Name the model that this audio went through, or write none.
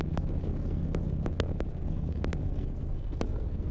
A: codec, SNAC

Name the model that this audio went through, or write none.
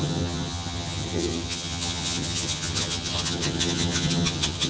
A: vocoder, HiFi-GAN